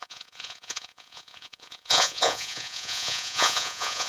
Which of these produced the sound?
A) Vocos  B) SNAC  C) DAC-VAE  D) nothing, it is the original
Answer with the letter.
A